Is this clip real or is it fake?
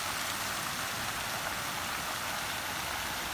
real